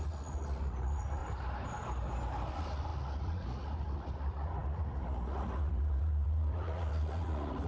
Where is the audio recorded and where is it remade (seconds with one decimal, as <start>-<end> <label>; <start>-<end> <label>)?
0.0-1.2 remade; 1.2-2.5 recorded; 2.5-7.7 remade